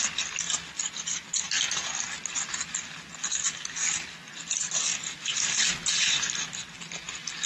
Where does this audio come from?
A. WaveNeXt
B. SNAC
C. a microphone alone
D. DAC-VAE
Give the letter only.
C